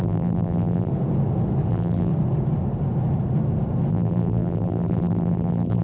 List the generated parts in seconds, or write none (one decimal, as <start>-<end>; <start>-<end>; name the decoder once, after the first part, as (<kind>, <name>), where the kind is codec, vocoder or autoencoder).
0.0-0.9 (vocoder, BigVGAN v2); 1.7-2.1; 3.9-5.8